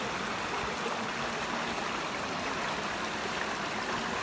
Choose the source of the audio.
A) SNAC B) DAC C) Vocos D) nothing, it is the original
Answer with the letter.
D